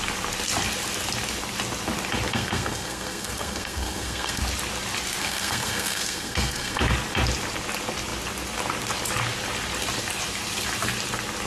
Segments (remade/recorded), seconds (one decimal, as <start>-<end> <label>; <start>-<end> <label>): 0.0-2.3 recorded; 2.3-4.4 remade; 4.4-5.2 recorded; 5.2-6.8 remade; 6.8-11.5 recorded